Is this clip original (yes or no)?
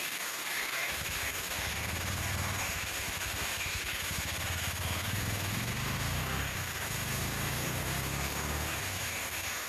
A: no